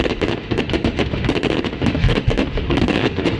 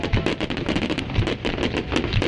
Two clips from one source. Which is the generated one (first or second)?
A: first